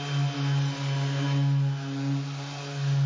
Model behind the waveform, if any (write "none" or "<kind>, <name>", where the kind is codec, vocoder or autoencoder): none